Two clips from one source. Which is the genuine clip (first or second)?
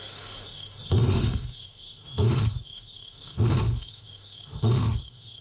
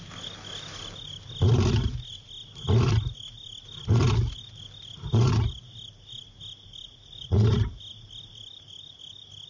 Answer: second